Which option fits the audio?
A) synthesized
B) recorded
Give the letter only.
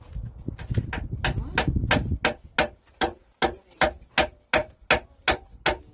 B